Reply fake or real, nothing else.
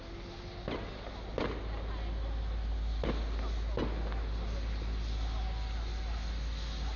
real